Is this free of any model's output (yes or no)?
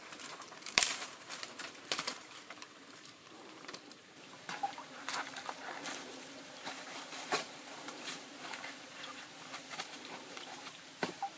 no